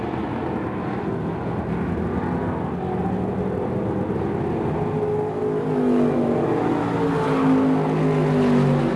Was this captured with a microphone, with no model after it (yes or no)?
yes